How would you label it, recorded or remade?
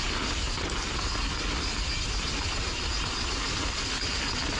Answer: recorded